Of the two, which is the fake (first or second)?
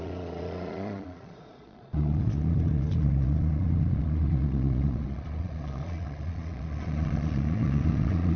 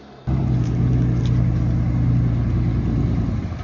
first